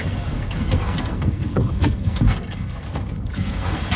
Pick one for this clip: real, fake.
fake